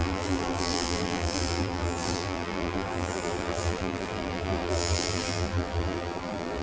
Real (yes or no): no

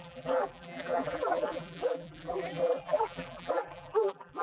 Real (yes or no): no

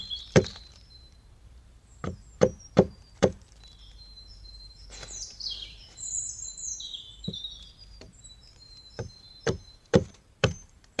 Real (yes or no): no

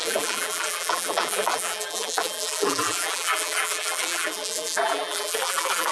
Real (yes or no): no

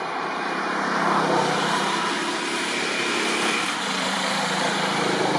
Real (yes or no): no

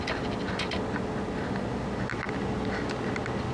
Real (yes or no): yes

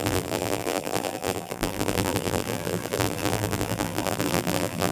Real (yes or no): no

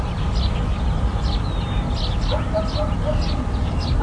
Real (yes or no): yes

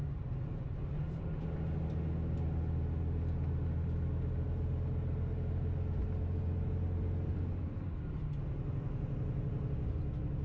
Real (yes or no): yes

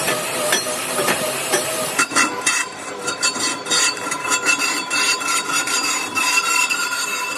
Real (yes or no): no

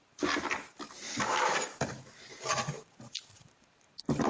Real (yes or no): no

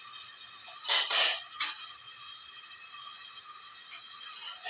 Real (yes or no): yes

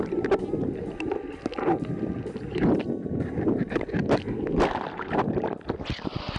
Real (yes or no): yes